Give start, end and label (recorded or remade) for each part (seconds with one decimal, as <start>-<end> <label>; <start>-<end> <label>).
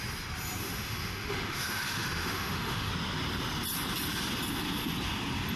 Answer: 0.0-0.6 recorded; 0.6-2.9 remade; 2.9-5.6 recorded